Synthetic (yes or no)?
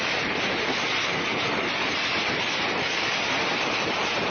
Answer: yes